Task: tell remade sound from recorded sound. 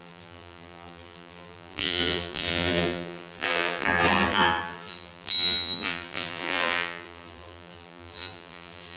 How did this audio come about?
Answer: remade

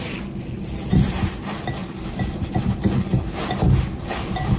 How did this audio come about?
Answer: recorded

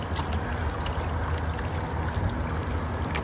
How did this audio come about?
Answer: recorded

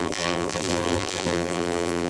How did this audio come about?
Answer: remade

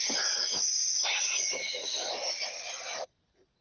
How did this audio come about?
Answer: recorded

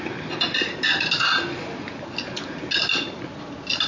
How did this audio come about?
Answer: recorded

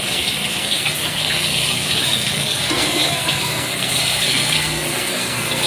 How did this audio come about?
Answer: remade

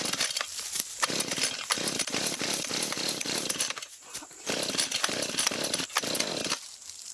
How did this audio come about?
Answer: recorded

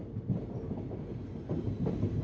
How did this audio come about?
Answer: recorded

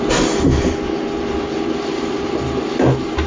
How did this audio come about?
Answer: recorded